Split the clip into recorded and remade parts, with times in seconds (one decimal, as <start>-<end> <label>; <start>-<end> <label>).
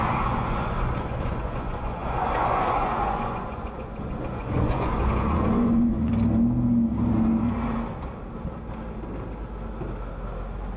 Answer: 0.0-6.1 remade; 6.1-10.8 recorded